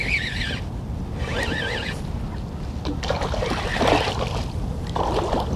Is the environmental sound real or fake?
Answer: real